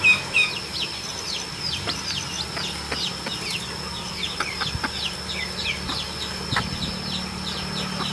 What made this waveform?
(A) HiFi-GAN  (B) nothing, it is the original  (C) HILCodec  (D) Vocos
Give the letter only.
B